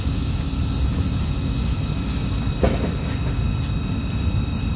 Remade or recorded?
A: recorded